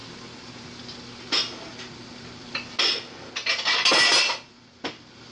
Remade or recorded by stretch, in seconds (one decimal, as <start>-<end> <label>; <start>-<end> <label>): 0.0-5.3 recorded